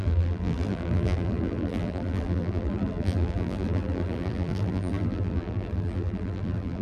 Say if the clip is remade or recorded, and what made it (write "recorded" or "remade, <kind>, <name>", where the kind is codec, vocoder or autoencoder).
remade, vocoder, BigVGAN v2